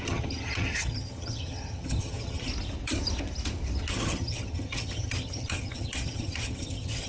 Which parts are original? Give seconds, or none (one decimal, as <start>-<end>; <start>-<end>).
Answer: 2.5-3.9